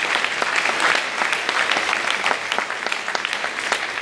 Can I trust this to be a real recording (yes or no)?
yes